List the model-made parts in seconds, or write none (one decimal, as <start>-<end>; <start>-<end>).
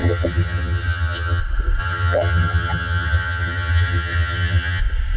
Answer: 0.0-1.4; 1.8-4.8